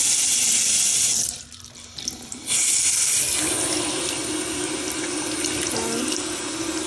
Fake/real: real